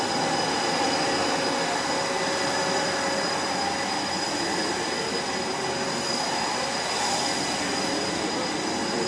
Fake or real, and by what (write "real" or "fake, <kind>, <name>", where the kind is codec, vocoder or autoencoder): real